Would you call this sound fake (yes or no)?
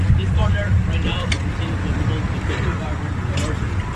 no